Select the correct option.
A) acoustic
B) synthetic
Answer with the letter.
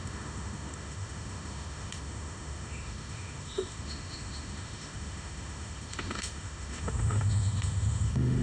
B